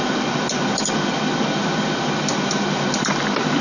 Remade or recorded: recorded